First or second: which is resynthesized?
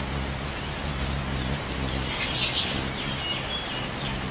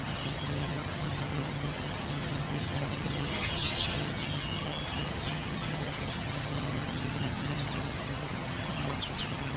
second